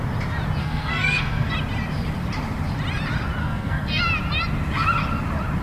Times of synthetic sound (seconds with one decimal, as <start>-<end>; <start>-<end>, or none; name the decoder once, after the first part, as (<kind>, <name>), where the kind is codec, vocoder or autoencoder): 0.6-1.5 (codec, SNAC); 3.4-4.0